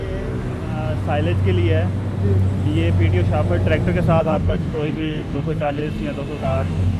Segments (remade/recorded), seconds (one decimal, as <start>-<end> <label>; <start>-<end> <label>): 0.0-4.2 recorded; 4.2-5.8 remade; 5.8-6.4 recorded; 6.4-7.0 remade